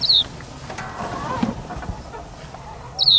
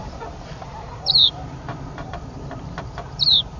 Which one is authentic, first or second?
first